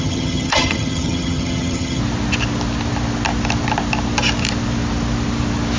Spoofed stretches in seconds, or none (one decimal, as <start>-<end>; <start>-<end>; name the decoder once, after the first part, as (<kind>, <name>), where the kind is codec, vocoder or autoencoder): 0.0-2.0 (vocoder, HiFi-GAN)